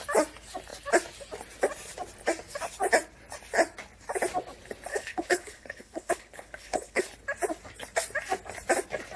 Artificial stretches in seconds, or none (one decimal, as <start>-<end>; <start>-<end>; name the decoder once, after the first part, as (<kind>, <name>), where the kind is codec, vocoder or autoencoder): 4.9-7.0 (codec, HILCodec)